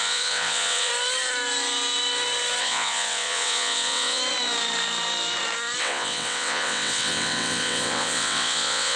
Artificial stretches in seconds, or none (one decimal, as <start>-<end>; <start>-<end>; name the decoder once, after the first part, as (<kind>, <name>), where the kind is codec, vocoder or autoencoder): 0.0-0.9 (vocoder, WaveNeXt); 2.6-4.2; 5.8-9.0